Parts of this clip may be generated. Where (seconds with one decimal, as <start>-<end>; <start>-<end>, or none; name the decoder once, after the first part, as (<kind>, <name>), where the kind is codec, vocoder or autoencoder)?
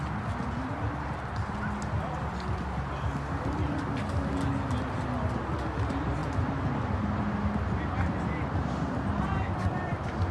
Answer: none